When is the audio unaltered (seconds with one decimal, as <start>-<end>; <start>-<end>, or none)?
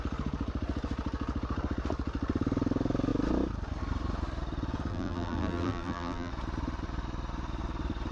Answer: 0.0-4.9; 6.3-8.1